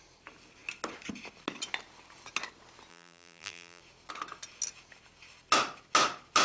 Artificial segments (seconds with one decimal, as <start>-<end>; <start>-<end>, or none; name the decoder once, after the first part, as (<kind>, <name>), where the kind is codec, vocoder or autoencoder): 2.9-3.8 (vocoder, BigVGAN v2)